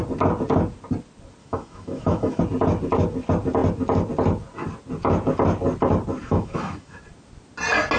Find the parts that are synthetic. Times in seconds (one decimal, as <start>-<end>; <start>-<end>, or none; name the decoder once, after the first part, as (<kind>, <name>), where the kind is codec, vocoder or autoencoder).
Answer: 1.4-2.4 (autoencoder, DAC-VAE); 6.2-7.0